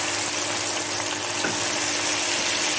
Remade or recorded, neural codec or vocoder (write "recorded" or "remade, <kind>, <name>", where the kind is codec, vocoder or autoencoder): recorded